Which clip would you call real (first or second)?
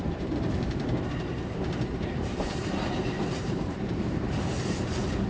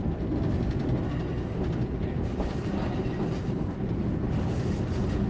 second